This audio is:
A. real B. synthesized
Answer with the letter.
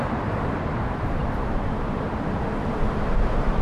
B